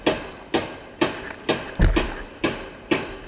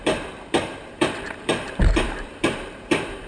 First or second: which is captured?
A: first